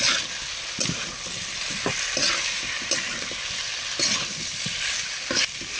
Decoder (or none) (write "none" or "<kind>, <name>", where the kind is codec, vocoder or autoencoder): none